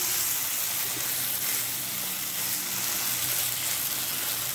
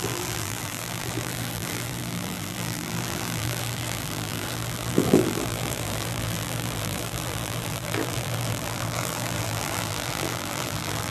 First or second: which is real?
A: first